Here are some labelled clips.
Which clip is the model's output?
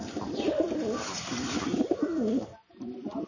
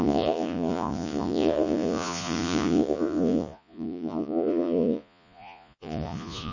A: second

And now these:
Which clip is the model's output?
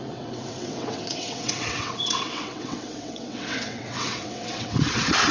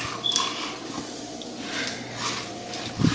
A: first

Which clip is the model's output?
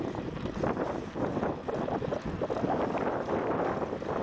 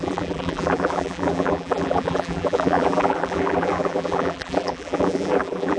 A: second